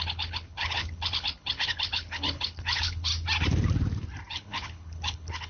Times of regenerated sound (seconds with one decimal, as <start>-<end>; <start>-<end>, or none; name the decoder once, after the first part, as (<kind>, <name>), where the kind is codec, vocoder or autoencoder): 0.0-3.1 (codec, HILCodec); 4.3-5.5